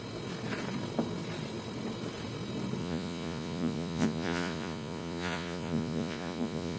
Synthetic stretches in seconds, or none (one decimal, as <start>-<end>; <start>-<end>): 2.8-6.8